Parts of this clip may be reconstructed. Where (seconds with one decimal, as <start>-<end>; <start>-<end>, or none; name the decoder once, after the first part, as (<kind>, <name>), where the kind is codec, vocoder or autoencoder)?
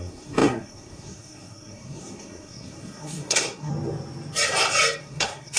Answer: 0.0-3.7 (codec, SNAC); 5.0-5.6